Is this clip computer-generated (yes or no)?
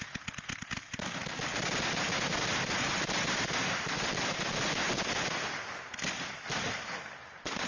no